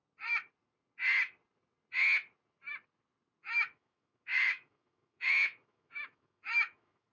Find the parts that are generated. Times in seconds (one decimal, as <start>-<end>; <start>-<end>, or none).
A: 3.4-7.1